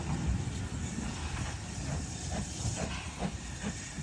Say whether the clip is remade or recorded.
recorded